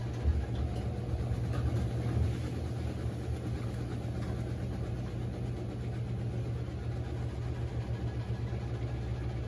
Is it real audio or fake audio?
real